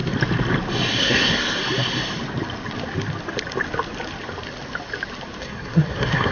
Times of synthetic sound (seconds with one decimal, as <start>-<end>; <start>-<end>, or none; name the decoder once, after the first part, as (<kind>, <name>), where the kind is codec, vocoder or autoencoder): 1.0-1.6 (codec, SNAC); 5.4-6.3